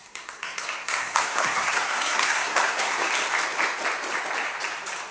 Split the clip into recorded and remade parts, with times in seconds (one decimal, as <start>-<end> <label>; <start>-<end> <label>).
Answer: 0.0-3.1 remade; 3.1-5.1 recorded